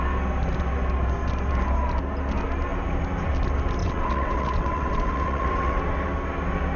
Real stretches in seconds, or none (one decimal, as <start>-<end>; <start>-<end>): 0.0-3.8; 5.8-6.8